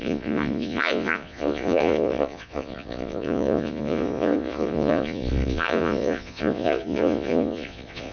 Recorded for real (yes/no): no